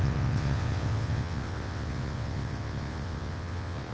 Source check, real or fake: fake